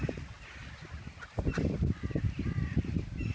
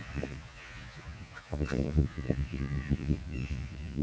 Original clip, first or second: first